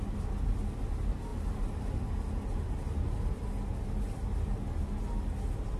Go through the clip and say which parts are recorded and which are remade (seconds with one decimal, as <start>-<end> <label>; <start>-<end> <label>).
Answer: 0.0-5.8 recorded